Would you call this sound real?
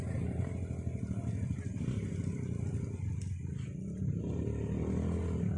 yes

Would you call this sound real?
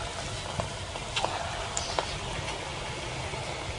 yes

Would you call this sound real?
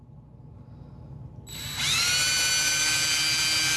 yes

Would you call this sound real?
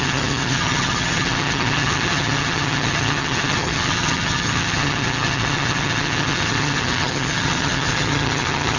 no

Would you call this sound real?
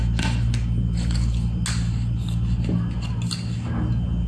yes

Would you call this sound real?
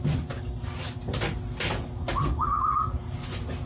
yes